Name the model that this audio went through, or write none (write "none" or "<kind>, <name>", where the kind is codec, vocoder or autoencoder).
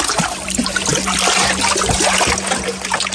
none